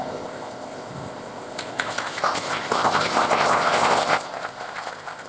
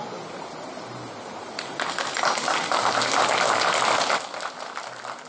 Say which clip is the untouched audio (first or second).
second